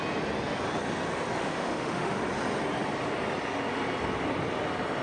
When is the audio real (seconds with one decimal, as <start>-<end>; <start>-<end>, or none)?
0.0-1.4; 2.2-5.0